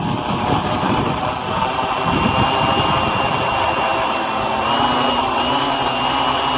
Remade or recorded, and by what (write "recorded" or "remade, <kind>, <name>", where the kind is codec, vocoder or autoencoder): recorded